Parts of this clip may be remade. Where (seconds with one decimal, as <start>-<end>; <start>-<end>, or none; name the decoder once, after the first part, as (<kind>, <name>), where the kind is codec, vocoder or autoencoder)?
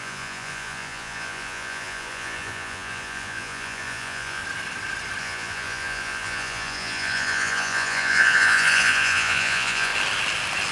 0.0-4.4 (vocoder, Vocos); 5.2-9.9